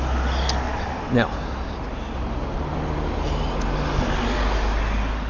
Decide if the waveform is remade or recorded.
recorded